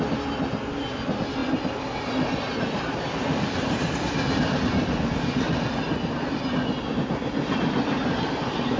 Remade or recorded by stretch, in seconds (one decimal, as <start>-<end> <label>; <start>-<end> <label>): 0.0-8.8 recorded